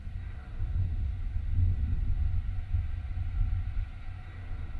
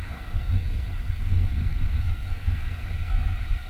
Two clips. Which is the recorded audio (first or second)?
first